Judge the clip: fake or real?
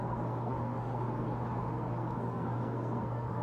fake